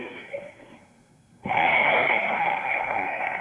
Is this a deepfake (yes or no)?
yes